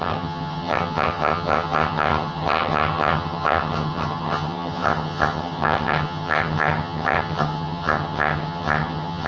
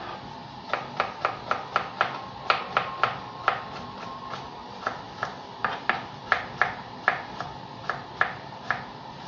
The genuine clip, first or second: second